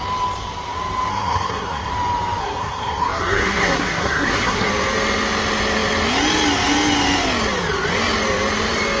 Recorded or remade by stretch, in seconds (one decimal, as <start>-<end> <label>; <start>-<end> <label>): 0.0-1.1 recorded; 1.1-1.9 remade; 1.9-2.4 recorded; 2.4-4.7 remade; 4.7-9.0 recorded